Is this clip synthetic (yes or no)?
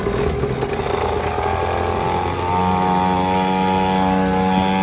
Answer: no